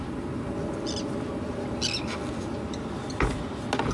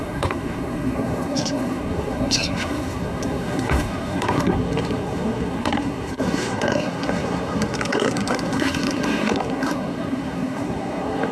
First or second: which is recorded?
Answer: first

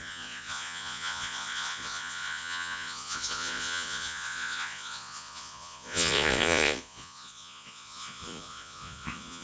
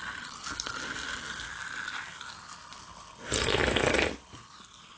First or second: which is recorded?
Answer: second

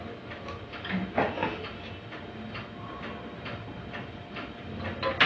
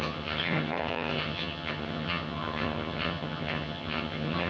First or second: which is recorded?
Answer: first